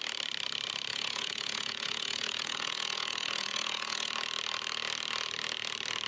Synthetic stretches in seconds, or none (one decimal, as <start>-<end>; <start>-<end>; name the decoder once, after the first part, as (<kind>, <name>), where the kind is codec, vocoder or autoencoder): 0.9-4.1 (vocoder, Vocos)